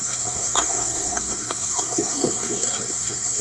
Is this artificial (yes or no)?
yes